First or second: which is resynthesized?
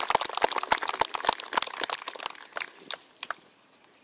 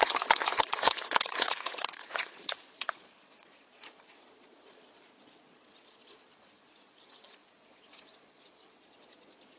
second